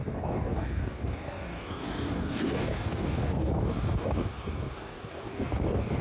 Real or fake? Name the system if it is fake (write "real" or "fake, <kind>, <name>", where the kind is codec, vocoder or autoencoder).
fake, codec, DAC